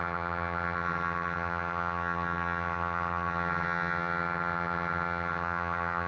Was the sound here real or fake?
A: fake